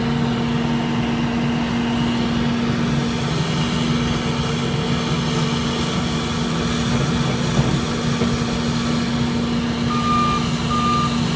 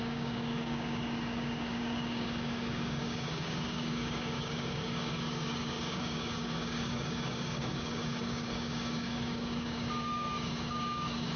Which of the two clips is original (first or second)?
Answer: first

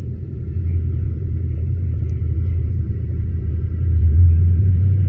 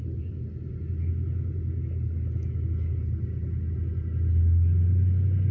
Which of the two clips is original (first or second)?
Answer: second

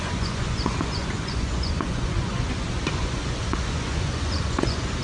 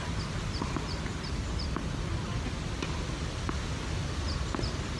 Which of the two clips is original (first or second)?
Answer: second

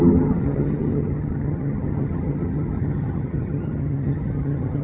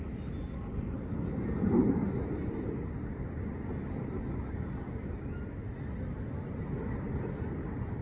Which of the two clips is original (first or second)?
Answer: second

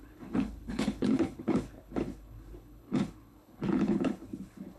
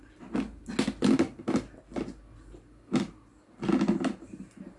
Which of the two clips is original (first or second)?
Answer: second